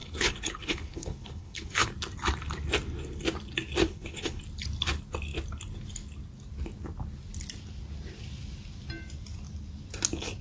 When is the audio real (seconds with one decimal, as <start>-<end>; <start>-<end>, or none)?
1.9-3.8; 4.4-10.4

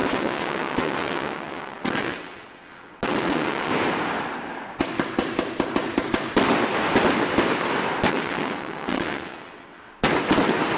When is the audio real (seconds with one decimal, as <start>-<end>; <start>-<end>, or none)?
3.7-8.1; 9.9-10.8